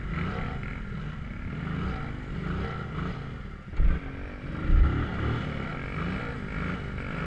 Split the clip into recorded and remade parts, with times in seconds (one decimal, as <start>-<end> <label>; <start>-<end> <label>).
0.0-7.3 recorded

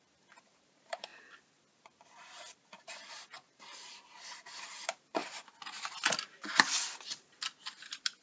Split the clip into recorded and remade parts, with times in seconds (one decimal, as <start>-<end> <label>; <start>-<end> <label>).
0.0-1.1 remade; 1.1-2.6 recorded; 2.6-5.2 remade; 5.2-8.2 recorded